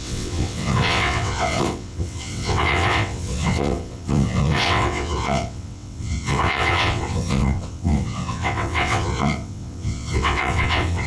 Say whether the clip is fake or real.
fake